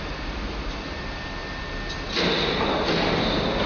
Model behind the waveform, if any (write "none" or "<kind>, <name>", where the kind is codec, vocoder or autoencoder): none